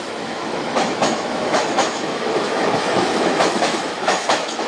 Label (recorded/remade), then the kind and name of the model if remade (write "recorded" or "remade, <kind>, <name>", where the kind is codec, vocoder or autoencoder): remade, autoencoder, DAC-VAE